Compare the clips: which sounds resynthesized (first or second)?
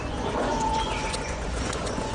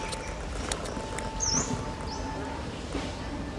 first